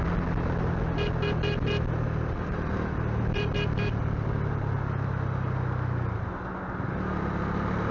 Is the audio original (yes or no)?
yes